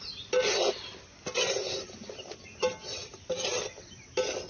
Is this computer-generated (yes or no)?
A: no